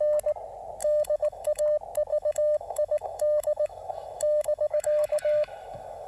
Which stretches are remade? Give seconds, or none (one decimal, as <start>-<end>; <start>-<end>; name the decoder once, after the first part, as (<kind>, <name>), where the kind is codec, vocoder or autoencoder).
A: 0.8-1.6 (autoencoder, DAC-VAE); 2.1-6.1